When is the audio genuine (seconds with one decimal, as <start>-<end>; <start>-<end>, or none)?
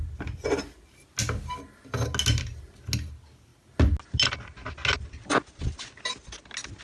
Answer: 0.0-6.8